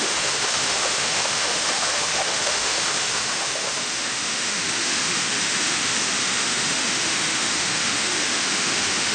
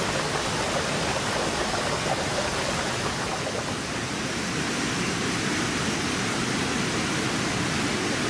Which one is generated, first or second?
first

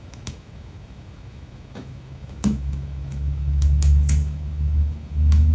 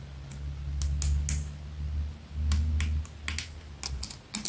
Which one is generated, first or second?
first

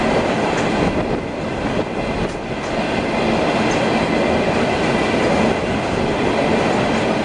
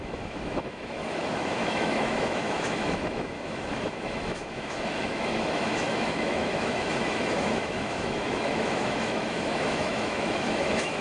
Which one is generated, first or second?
second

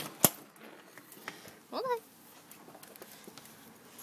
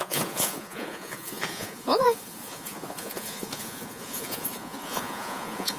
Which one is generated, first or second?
second